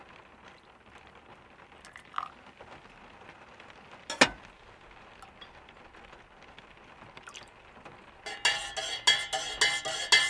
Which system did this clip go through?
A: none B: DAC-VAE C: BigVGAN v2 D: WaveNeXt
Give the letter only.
A